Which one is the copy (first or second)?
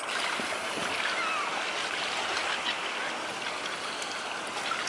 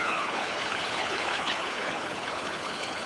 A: second